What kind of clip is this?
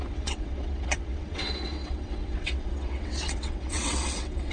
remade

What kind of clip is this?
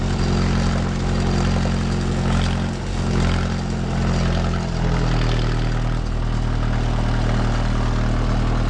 recorded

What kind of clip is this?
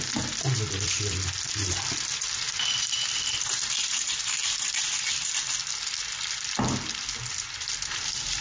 recorded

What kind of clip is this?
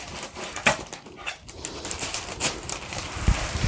remade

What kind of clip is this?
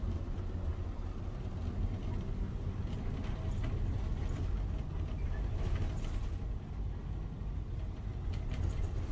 recorded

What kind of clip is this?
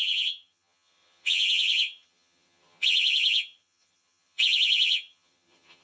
remade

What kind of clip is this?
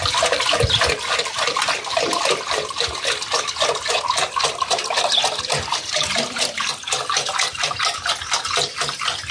recorded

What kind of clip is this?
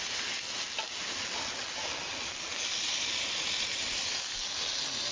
recorded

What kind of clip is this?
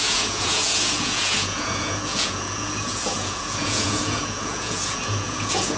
remade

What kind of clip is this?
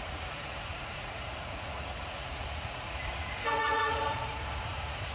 remade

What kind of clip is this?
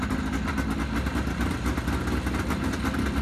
recorded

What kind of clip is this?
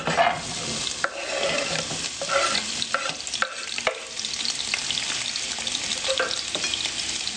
recorded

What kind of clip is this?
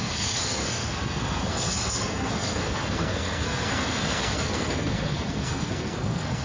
remade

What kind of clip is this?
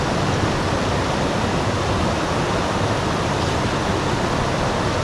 recorded